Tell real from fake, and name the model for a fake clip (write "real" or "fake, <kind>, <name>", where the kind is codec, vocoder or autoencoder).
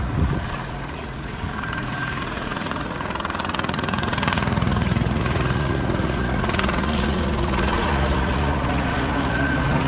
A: fake, vocoder, Vocos